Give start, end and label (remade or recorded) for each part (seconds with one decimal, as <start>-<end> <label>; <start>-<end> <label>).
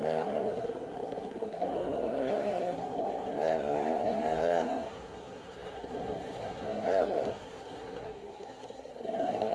0.0-9.5 remade